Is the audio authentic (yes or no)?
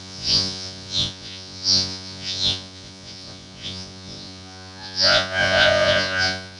no